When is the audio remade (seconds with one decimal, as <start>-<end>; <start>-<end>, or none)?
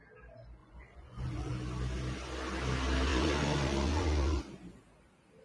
0.6-1.5; 3.1-4.4